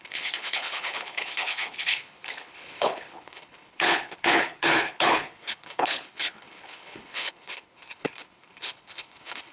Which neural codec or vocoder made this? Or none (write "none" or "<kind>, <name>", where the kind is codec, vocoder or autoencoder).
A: codec, HILCodec